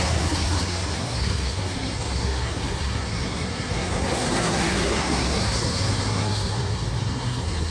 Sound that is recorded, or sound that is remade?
remade